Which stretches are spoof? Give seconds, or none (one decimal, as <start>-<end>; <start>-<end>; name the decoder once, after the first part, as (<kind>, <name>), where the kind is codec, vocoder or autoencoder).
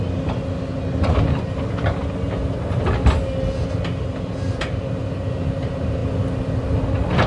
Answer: none